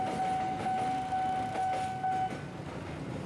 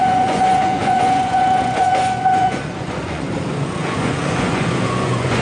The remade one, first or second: second